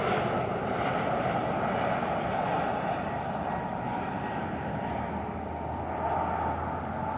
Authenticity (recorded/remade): recorded